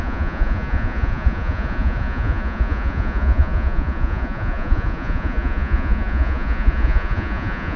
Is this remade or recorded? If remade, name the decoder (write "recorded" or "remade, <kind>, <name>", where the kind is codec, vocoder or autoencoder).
remade, vocoder, Vocos